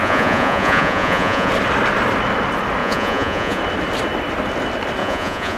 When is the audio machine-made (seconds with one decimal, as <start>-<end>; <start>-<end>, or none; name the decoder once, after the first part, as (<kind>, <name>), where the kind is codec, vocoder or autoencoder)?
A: 0.0-1.5 (vocoder, Vocos); 2.8-3.6; 5.0-5.6